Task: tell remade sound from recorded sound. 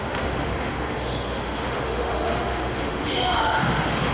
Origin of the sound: remade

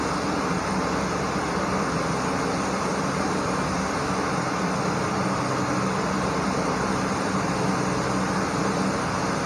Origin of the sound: recorded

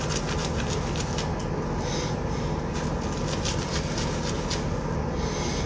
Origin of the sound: recorded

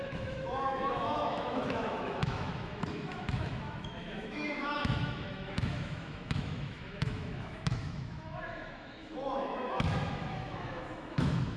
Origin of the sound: remade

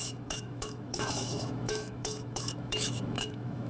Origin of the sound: remade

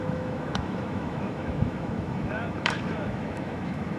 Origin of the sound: remade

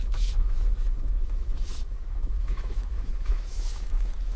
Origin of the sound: remade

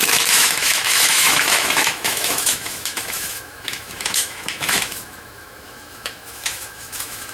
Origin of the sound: remade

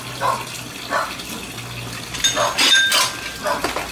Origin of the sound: recorded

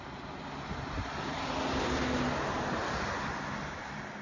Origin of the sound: recorded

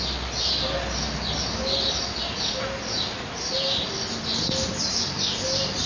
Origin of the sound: recorded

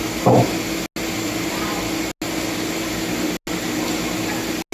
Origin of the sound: recorded